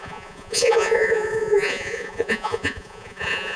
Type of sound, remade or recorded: remade